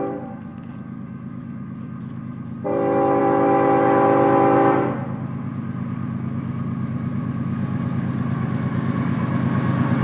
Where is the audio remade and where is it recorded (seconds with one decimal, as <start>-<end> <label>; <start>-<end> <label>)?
0.0-10.0 recorded